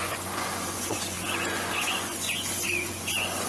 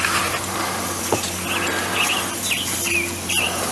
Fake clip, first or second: first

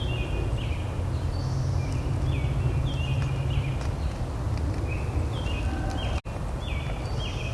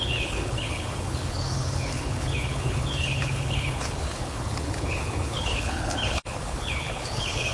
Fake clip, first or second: second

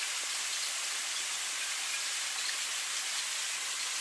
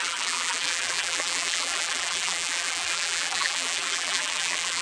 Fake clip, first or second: second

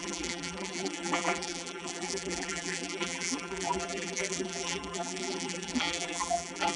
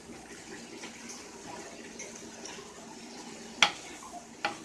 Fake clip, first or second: first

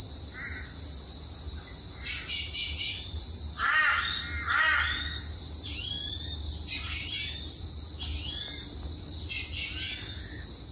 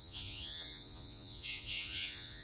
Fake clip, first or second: second